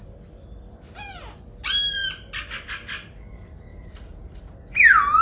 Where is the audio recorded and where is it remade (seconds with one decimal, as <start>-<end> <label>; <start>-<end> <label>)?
0.0-3.7 recorded; 3.7-4.3 remade; 4.3-5.2 recorded